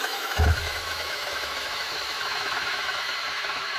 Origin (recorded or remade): remade